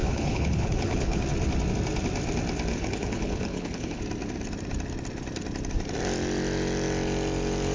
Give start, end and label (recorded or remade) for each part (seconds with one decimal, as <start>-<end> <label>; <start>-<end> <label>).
0.0-1.2 remade; 1.2-2.7 recorded; 2.7-4.0 remade; 4.0-7.7 recorded

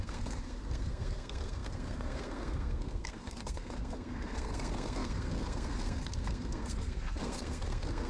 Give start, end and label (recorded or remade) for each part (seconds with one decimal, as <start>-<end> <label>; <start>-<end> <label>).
0.0-8.1 remade

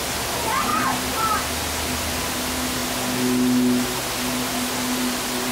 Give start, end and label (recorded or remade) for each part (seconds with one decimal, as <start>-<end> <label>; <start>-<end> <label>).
0.0-0.7 recorded; 0.7-1.4 remade; 1.4-5.5 recorded

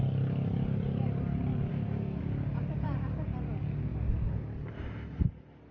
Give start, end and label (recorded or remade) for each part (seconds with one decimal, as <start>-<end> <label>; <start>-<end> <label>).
0.0-1.7 recorded; 1.7-2.2 remade; 2.2-5.7 recorded

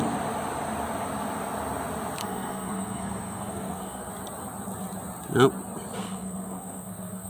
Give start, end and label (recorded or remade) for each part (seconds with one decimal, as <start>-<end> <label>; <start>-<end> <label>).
0.0-2.2 recorded; 2.2-4.1 remade; 4.1-6.0 recorded; 6.0-7.3 remade

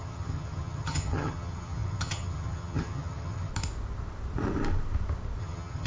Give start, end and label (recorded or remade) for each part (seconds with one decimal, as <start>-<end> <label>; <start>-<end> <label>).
0.0-3.5 remade; 3.5-5.4 recorded; 5.4-5.9 remade